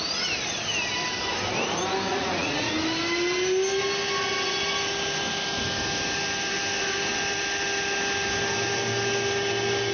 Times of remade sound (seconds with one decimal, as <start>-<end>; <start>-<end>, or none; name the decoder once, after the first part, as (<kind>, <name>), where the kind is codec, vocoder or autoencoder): 2.1-2.7 (vocoder, Vocos)